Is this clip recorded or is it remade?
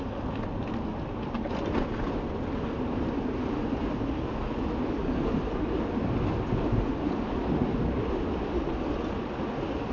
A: recorded